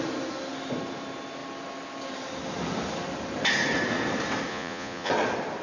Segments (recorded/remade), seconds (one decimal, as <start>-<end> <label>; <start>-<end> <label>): 0.0-4.5 recorded; 4.5-5.1 remade; 5.1-5.6 recorded